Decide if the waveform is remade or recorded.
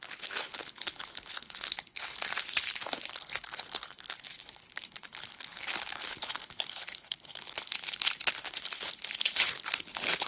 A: remade